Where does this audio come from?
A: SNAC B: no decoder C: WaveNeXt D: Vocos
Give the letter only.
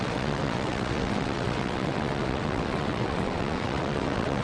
C